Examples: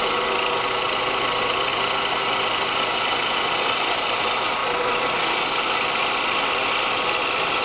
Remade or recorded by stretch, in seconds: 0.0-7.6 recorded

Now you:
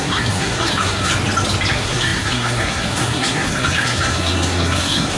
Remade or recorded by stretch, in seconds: 0.0-1.1 remade; 1.1-1.7 recorded; 1.7-5.2 remade

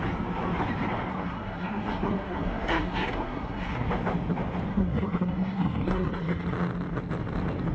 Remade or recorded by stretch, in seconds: 0.0-1.1 recorded; 1.1-3.9 remade; 3.9-4.7 recorded; 4.7-6.4 remade; 6.4-7.7 recorded